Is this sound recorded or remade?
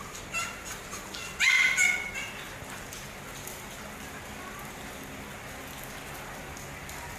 recorded